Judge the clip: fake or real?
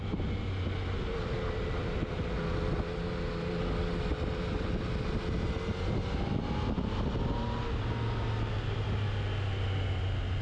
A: real